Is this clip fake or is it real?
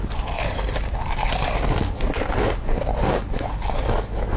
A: real